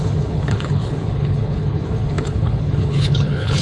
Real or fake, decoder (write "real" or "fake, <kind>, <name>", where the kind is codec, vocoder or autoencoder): fake, codec, HILCodec